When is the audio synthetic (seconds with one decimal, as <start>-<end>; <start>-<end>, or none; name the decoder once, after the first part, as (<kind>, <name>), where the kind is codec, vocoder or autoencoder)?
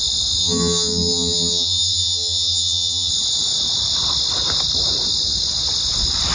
0.4-3.1 (vocoder, HiFi-GAN)